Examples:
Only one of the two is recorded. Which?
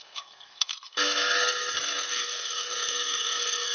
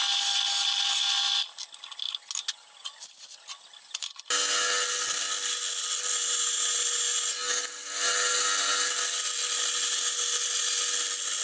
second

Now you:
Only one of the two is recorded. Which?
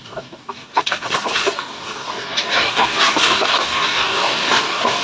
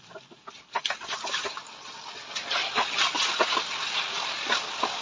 second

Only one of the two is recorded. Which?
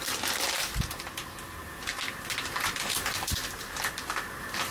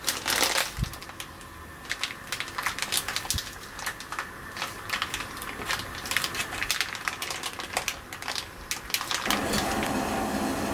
second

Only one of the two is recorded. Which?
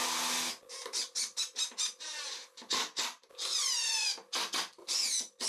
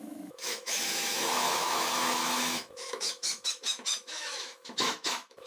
first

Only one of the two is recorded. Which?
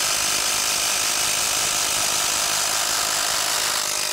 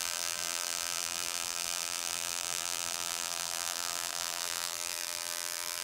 first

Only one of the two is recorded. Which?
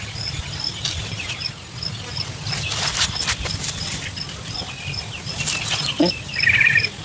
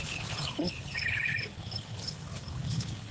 first